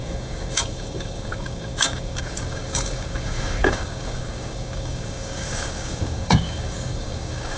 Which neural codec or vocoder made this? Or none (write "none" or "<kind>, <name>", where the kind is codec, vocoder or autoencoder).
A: codec, DAC